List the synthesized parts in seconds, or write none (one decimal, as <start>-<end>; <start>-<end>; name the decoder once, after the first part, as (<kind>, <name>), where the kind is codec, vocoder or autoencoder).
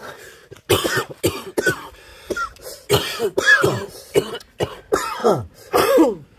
2.1-4.3 (vocoder, BigVGAN v2); 5.2-5.9